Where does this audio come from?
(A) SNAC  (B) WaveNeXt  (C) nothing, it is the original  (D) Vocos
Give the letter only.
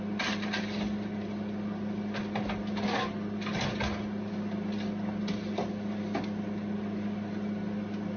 C